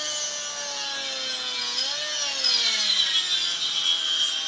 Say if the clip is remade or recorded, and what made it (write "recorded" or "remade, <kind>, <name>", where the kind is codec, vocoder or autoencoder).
recorded